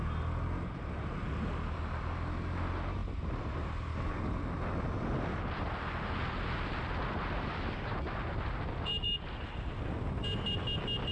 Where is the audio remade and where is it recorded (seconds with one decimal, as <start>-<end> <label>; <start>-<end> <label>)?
0.0-11.1 recorded